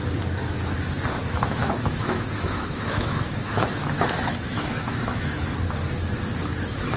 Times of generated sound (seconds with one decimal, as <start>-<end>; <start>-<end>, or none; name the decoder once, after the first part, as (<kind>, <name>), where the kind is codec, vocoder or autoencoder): 1.2-5.4 (autoencoder, DAC-VAE)